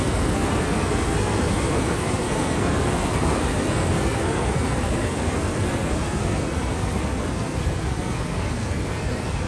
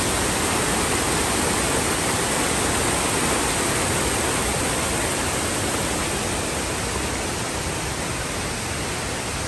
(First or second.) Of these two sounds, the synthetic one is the first